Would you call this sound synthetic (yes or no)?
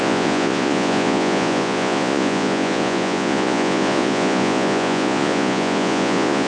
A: yes